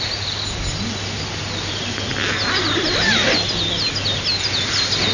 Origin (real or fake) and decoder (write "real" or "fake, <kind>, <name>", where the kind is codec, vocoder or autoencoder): real